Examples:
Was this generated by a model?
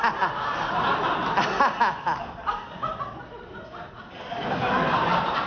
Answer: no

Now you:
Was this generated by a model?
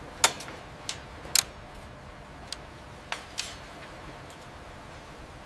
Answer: no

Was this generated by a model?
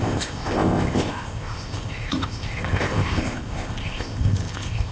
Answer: yes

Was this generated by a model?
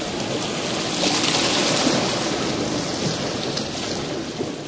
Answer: no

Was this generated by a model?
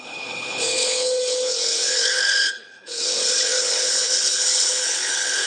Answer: yes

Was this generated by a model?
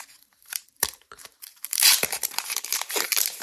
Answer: yes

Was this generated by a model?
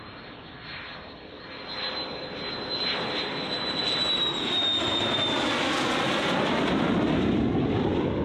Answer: no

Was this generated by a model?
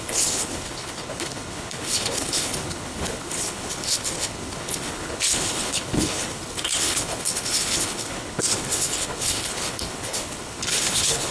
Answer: yes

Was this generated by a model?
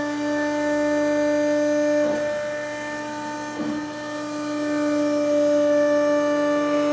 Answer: no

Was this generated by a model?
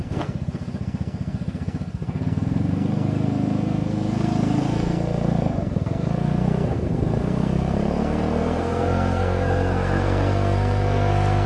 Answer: yes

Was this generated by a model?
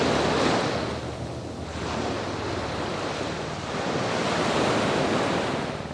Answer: no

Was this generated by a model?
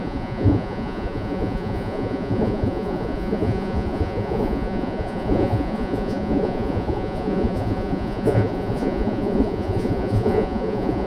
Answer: yes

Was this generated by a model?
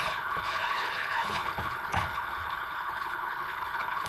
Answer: yes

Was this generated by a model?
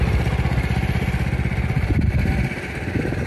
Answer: no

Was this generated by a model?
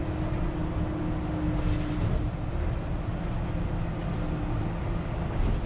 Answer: no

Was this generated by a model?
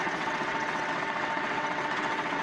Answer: yes